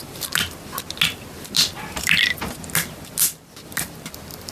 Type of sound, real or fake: real